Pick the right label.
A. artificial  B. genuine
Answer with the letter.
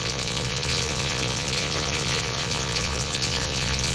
A